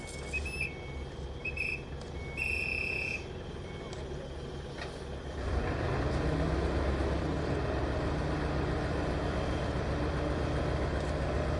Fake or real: real